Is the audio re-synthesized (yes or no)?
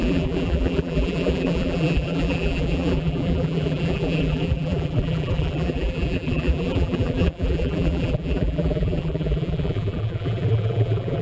yes